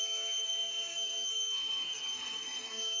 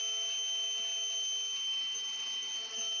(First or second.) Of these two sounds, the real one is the second